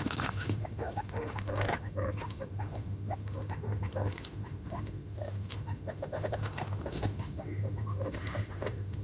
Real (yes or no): no